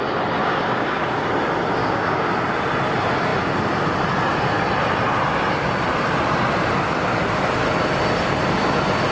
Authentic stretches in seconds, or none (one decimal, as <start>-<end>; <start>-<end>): 0.0-0.4; 1.3-1.8; 2.3-9.1